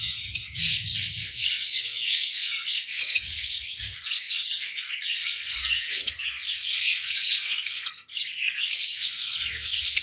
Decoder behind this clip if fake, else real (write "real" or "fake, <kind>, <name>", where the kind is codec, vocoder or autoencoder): fake, codec, SNAC